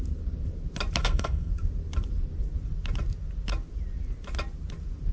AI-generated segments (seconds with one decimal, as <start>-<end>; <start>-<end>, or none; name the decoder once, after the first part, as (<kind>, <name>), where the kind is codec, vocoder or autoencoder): 1.0-1.5 (codec, SNAC)